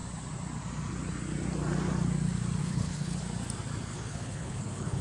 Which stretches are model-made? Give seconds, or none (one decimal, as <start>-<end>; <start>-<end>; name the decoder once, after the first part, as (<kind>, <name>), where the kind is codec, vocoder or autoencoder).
2.6-3.2 (codec, HILCodec); 3.9-5.0